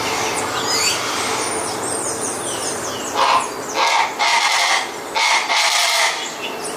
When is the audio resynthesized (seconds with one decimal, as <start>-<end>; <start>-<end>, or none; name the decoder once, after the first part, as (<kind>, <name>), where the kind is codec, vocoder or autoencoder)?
none